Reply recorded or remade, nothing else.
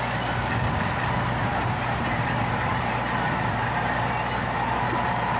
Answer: recorded